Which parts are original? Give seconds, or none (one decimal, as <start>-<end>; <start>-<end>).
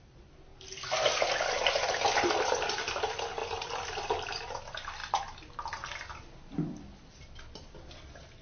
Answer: 0.0-3.4; 4.6-8.4